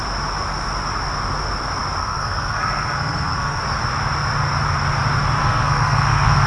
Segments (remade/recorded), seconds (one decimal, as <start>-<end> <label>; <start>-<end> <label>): 0.0-2.0 recorded; 2.0-3.6 remade; 3.6-5.4 recorded; 5.4-6.5 remade